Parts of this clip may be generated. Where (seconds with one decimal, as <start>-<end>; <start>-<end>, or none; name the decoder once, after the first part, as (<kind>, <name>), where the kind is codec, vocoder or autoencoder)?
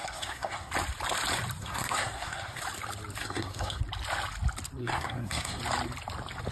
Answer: 0.0-0.7 (codec, SNAC); 1.6-2.6; 3.2-3.8; 4.8-5.6